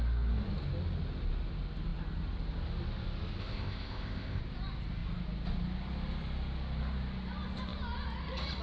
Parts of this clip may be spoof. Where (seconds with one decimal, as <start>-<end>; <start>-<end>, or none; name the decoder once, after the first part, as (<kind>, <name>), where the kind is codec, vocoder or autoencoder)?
3.4-4.4 (codec, ZipCodec)